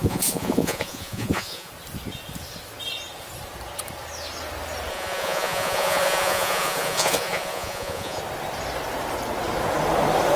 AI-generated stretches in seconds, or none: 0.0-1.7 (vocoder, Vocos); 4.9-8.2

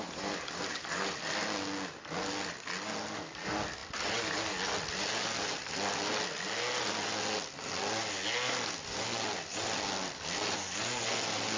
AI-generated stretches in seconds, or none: none